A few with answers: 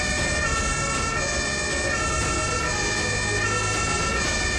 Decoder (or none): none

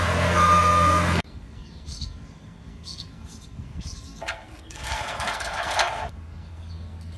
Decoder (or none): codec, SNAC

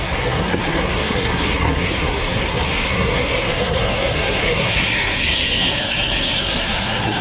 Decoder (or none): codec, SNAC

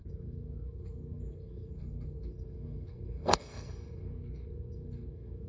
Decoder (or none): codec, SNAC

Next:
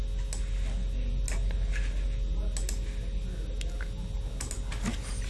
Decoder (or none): none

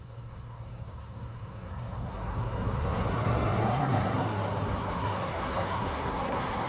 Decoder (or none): codec, SNAC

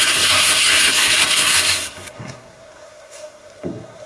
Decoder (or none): codec, SNAC